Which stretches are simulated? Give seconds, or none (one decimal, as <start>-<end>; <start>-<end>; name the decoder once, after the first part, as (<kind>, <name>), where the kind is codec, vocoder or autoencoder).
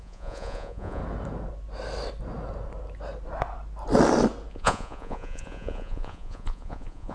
0.0-1.0 (vocoder, Vocos); 4.5-7.1